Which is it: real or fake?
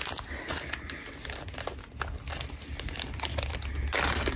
real